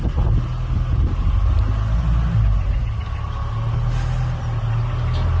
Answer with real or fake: real